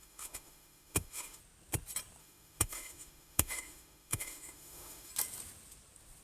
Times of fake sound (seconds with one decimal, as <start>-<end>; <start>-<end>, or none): 0.0-1.4; 2.2-5.1